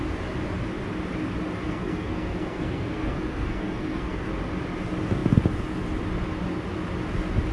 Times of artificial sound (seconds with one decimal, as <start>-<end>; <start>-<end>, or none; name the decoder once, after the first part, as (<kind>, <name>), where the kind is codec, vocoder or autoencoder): 1.6-4.3 (codec, SNAC)